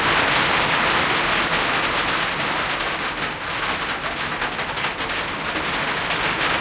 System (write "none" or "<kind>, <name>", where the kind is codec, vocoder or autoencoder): none